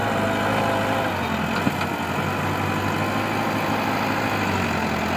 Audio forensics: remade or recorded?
recorded